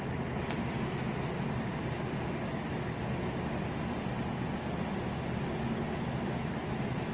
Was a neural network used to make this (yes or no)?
no